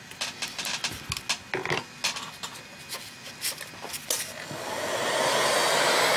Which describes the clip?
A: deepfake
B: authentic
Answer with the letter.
B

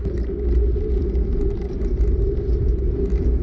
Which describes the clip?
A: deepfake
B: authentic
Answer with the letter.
B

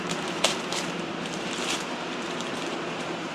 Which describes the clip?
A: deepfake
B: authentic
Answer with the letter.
A